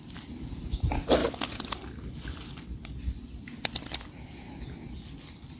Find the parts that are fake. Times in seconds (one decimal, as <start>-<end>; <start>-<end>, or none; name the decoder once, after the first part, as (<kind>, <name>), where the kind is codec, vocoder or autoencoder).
none